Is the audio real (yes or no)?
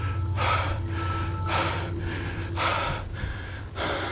yes